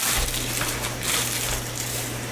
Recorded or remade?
recorded